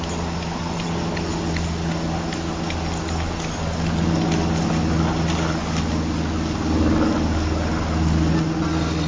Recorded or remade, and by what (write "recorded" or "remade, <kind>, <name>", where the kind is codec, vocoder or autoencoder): recorded